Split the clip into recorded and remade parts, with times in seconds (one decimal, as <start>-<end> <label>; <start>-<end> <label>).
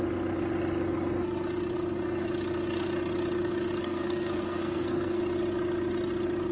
0.0-3.8 recorded; 3.8-5.2 remade; 5.2-6.5 recorded